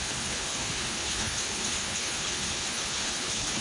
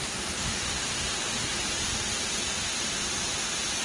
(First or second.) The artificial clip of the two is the first